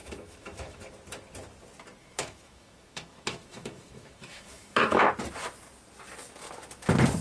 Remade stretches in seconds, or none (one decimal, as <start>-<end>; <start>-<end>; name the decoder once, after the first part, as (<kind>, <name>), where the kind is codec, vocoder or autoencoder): 0.0-0.8 (autoencoder, DAC-VAE); 2.0-5.1